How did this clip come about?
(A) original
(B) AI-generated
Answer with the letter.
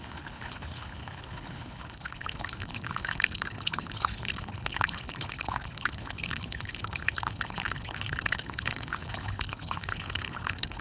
B